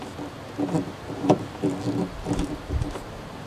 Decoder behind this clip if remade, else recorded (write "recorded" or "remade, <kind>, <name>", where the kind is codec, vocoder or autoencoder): recorded